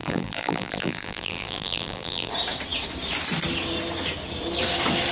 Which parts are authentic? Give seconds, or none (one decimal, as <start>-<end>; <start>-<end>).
2.3-5.1